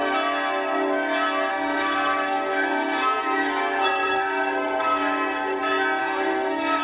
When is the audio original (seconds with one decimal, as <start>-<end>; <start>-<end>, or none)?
0.0-1.5; 5.6-6.0